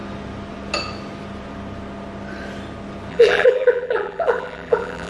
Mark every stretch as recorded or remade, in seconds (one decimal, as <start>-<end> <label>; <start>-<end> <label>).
0.0-3.1 recorded; 3.1-5.1 remade